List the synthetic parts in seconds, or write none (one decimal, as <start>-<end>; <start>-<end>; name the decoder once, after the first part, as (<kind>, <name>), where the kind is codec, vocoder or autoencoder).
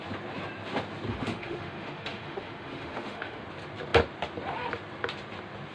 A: 1.1-3.4 (autoencoder, DAC-VAE)